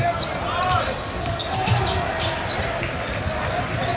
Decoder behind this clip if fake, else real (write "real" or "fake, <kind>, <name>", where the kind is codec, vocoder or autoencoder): real